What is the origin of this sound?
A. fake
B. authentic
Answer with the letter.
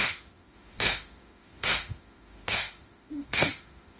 A